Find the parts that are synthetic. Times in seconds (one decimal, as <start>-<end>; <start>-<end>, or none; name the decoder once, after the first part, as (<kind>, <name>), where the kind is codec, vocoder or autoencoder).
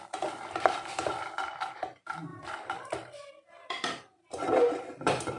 0.0-5.4 (vocoder, BigVGAN v2)